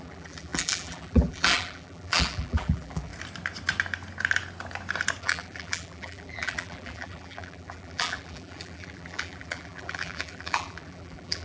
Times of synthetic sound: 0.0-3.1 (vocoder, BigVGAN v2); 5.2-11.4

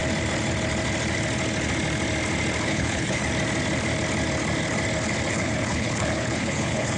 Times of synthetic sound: 2.6-3.2 (codec, HILCodec); 5.3-7.0

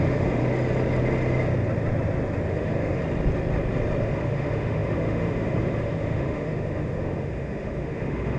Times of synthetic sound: 0.0-0.4 (autoencoder, DAC-VAE); 2.5-3.0; 4.0-8.4